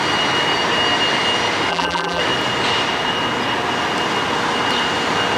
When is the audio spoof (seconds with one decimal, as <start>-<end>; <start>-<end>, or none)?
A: 1.7-2.2